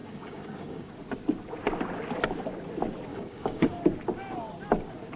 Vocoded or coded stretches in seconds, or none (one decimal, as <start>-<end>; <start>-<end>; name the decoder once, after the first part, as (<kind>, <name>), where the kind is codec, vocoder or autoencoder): 0.0-0.9 (codec, DAC); 3.1-3.7